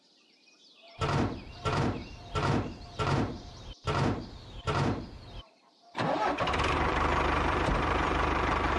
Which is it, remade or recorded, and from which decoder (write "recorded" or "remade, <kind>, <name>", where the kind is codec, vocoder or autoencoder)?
remade, vocoder, BigVGAN v2